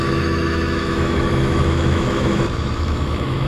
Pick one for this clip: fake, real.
fake